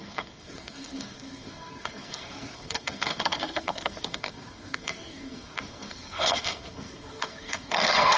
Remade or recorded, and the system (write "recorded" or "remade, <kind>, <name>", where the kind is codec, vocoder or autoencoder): remade, codec, SNAC